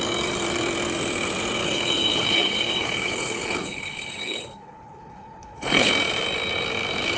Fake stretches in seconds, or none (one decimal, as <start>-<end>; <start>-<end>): 1.6-5.9